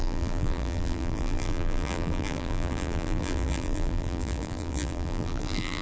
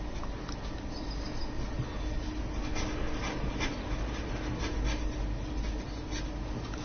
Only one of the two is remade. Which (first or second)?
first